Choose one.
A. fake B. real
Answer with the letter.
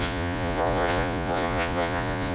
A